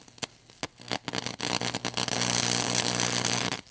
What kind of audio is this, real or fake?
real